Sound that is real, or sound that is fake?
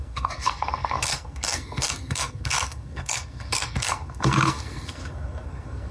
fake